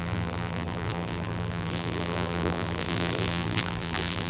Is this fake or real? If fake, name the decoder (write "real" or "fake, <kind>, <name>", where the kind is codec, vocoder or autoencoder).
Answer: fake, vocoder, BigVGAN v2